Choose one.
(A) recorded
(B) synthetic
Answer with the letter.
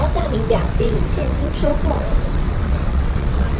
B